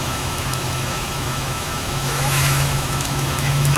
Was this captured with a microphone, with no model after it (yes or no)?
no